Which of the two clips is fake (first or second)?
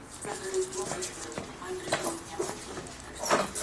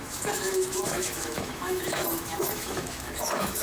second